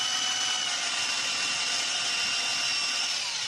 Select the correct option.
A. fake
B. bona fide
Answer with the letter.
B